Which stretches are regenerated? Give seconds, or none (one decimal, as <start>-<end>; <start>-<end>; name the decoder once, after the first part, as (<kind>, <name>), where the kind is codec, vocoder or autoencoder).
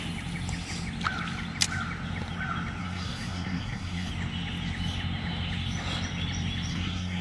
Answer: 2.8-4.1 (codec, SNAC); 6.7-7.2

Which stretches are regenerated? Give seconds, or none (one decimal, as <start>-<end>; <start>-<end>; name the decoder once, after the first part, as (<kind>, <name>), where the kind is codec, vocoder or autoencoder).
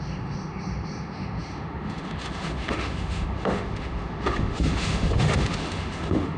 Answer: 0.0-6.4 (autoencoder, DAC-VAE)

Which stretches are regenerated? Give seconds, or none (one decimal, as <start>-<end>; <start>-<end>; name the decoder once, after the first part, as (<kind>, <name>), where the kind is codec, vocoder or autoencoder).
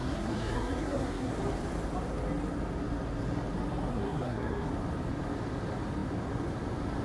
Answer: 0.0-1.3 (codec, SNAC); 3.9-4.7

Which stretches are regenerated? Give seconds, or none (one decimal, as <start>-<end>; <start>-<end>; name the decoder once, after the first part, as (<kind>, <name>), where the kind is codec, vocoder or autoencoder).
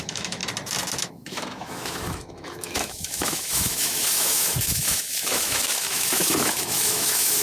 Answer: 0.0-0.4 (autoencoder, DAC-VAE); 1.0-7.4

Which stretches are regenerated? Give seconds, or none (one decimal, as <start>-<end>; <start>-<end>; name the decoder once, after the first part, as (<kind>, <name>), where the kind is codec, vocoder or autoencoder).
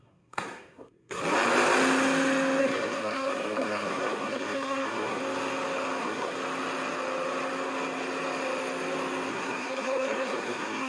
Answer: 0.0-1.2 (codec, SNAC); 2.6-5.2; 6.0-6.4; 9.3-10.9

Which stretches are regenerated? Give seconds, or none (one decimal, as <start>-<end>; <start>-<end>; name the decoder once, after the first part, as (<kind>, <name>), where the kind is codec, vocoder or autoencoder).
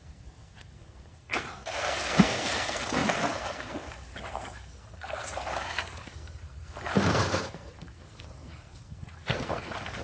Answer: 0.0-10.0 (codec, SNAC)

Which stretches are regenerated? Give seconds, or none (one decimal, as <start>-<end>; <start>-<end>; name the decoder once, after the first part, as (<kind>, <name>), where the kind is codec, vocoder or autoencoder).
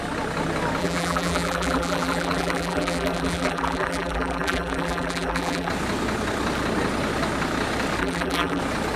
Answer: 0.8-5.7 (vocoder, BigVGAN v2); 8.0-8.6